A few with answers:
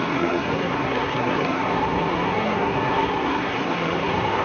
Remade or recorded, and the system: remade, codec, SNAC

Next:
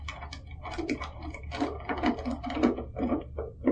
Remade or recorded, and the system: recorded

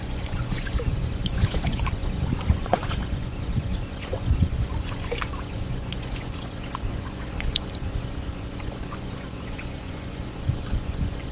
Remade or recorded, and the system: remade, vocoder, Vocos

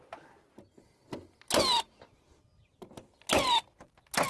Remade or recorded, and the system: recorded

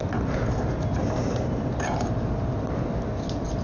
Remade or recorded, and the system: recorded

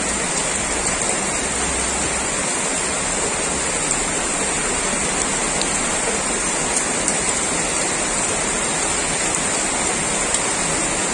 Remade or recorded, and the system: recorded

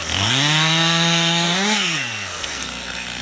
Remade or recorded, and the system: remade, codec, SNAC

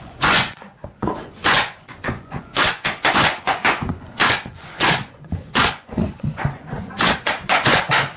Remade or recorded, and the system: remade, vocoder, Vocos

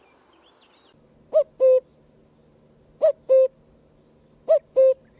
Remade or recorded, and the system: recorded